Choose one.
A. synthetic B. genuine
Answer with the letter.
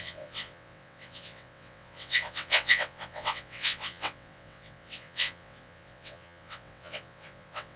A